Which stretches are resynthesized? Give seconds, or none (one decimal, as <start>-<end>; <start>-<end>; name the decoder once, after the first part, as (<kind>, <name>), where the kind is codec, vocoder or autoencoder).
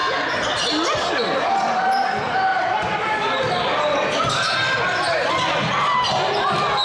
2.5-3.4 (vocoder, BigVGAN v2)